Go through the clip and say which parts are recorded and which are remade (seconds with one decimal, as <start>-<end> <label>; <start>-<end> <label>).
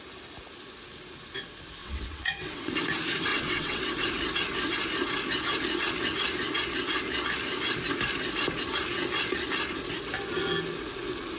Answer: 0.0-1.8 recorded; 1.8-2.7 remade; 2.7-3.3 recorded; 3.3-3.9 remade; 3.9-11.4 recorded